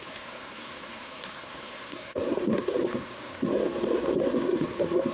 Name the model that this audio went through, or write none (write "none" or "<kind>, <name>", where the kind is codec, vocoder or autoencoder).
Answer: codec, SNAC